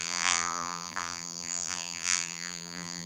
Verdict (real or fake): fake